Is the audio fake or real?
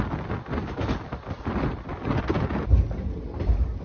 real